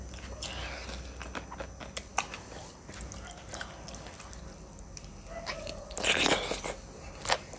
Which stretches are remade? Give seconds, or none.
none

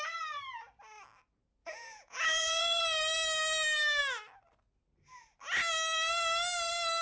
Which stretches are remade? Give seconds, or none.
1.6-2.8 (vocoder, Vocos)

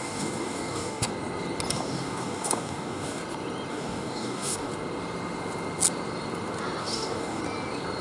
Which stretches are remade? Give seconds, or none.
0.0-1.1 (codec, DAC); 1.7-3.2; 3.7-4.7; 6.8-7.4